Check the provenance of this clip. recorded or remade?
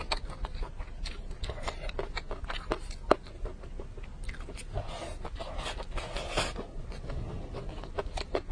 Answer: recorded